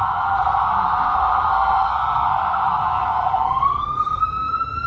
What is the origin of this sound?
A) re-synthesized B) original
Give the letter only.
A